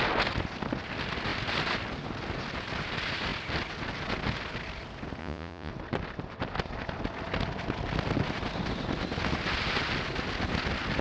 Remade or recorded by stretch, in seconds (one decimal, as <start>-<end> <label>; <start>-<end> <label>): 0.0-5.2 recorded; 5.2-5.7 remade; 5.7-11.0 recorded